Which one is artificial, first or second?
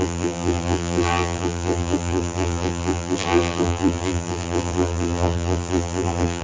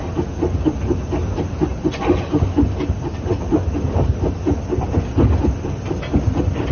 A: first